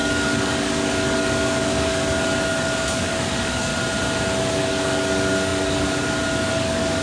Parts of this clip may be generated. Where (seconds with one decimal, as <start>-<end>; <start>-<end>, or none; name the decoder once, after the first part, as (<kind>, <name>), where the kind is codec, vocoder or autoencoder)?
0.0-3.7 (codec, DAC); 4.5-7.0